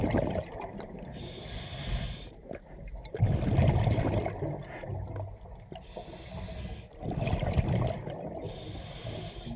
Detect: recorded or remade recorded